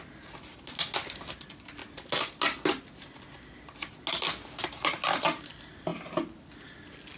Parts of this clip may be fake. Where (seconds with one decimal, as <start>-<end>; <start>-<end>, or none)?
none